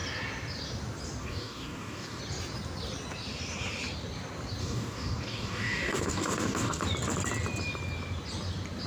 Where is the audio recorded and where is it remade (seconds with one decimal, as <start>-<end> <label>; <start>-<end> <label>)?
0.0-1.2 recorded; 1.2-2.2 remade; 2.2-4.6 recorded; 4.6-6.8 remade; 6.8-8.9 recorded